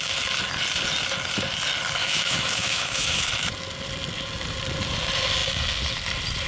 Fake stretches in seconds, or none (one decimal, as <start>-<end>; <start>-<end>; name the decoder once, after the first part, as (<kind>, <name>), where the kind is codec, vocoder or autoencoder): 2.0-3.5 (autoencoder, DAC-VAE)